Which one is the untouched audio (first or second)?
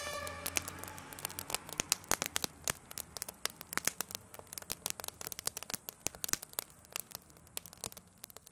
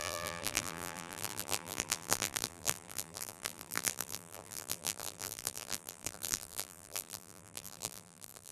first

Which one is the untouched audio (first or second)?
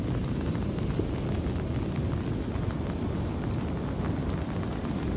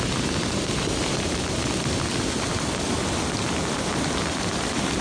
first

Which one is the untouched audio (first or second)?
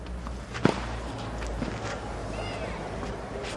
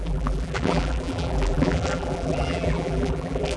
first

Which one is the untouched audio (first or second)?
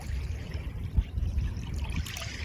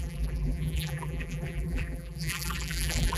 first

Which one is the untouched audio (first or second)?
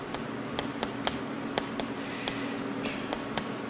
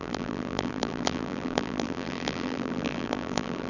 first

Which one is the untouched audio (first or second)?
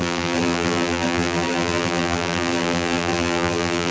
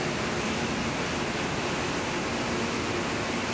second